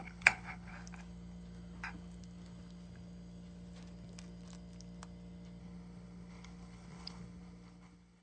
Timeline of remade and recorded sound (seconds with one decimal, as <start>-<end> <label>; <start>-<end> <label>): 0.0-0.7 remade; 0.7-5.6 recorded; 5.6-8.2 remade